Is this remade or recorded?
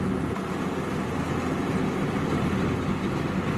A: recorded